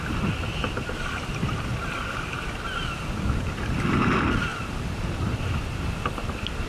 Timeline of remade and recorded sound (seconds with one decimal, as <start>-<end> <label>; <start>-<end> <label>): 0.0-6.7 recorded